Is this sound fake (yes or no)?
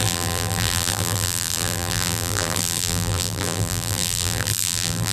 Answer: yes